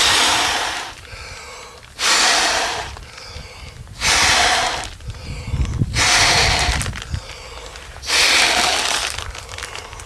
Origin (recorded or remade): recorded